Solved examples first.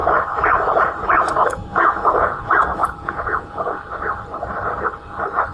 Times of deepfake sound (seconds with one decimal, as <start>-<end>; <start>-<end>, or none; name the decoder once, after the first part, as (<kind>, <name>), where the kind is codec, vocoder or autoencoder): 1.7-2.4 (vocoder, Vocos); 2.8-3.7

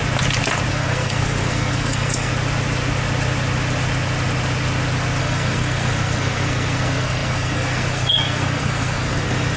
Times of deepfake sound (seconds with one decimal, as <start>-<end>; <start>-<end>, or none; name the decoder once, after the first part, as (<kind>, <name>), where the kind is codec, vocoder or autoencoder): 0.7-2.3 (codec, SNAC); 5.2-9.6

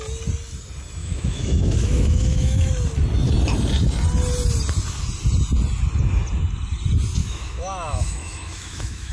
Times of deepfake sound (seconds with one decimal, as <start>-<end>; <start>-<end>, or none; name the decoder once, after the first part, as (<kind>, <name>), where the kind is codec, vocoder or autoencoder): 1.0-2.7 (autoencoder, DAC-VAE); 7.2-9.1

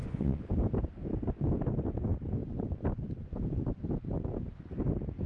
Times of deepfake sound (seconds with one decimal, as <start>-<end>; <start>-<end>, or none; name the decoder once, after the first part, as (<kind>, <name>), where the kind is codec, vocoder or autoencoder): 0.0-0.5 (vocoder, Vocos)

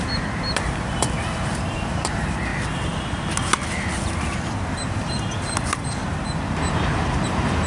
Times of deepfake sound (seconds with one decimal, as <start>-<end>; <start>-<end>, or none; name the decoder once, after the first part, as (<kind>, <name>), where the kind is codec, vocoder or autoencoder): 0.0-2.5 (vocoder, BigVGAN v2); 4.7-7.7

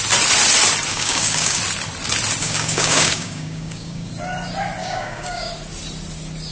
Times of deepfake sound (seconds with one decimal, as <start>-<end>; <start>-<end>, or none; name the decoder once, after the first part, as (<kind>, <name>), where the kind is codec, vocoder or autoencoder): 0.9-1.6 (codec, DAC); 2.4-4.1; 4.8-5.5

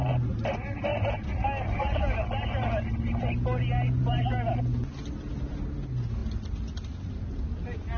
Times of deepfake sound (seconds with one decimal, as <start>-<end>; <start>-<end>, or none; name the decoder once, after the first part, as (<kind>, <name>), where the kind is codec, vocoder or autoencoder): none

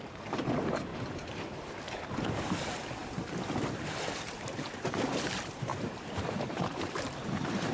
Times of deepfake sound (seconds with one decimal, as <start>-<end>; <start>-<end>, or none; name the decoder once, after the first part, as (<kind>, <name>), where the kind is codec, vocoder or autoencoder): 0.0-7.7 (vocoder, BigVGAN v2)